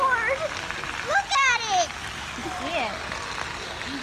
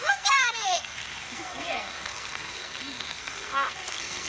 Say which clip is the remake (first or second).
second